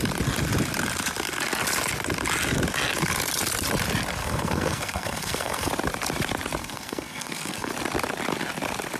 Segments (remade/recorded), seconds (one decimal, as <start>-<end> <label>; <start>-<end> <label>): 0.0-4.2 recorded; 4.2-5.7 remade; 5.7-6.6 recorded; 6.6-7.7 remade; 7.7-9.0 recorded